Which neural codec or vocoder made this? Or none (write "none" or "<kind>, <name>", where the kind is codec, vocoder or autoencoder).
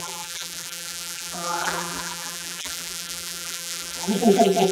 vocoder, BigVGAN v2